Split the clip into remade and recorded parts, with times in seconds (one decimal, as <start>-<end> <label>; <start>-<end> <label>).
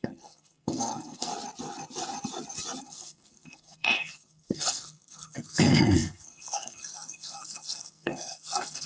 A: 0.0-1.3 remade; 1.3-2.8 recorded; 2.8-8.9 remade